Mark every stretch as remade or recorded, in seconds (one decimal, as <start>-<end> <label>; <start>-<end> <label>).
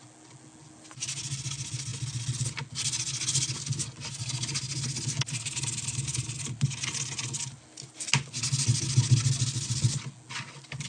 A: 0.0-10.9 recorded